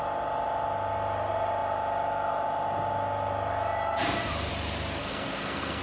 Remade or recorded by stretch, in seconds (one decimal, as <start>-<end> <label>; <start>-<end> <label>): 0.0-5.0 recorded; 5.0-5.8 remade